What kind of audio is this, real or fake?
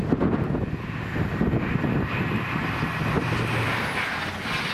real